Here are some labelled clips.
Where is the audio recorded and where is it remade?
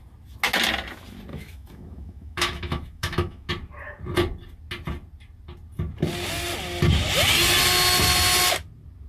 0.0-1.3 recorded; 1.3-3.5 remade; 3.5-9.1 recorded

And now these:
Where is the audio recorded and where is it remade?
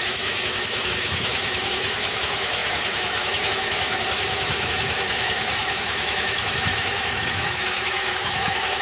0.0-8.8 remade